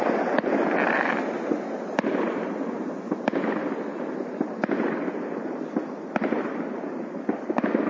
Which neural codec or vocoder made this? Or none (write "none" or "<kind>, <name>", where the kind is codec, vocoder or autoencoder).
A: none